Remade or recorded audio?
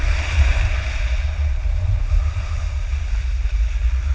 recorded